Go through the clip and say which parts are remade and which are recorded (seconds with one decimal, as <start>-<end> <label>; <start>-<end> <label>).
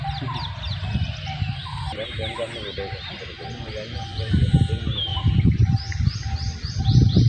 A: 0.0-7.3 recorded